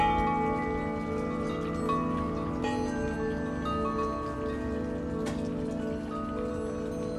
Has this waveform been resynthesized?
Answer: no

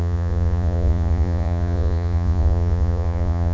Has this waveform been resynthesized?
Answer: yes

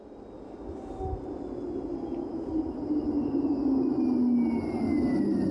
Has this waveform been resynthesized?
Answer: no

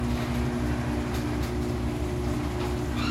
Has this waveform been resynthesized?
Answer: no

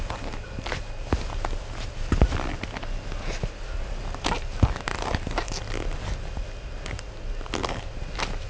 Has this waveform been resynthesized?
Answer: no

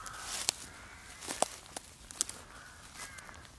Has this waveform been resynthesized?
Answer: no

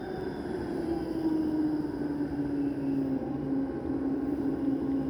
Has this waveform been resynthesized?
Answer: no